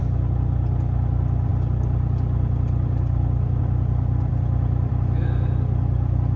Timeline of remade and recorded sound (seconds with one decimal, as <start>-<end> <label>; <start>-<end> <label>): 0.0-6.4 recorded